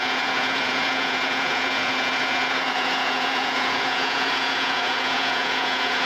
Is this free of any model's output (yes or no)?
no